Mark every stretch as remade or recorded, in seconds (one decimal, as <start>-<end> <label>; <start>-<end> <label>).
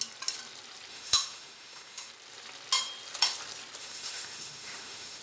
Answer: 0.0-0.9 recorded; 0.9-2.1 remade; 2.1-3.8 recorded; 3.8-5.2 remade